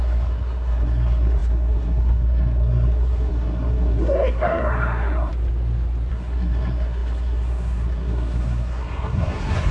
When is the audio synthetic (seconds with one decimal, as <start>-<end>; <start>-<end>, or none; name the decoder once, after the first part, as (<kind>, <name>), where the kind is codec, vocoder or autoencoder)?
0.0-5.3 (codec, SNAC); 6.1-9.7